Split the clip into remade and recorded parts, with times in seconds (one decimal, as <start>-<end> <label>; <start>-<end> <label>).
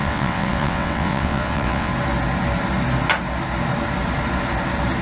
0.0-1.9 remade; 1.9-5.0 recorded